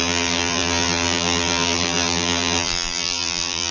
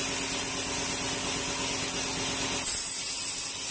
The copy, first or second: first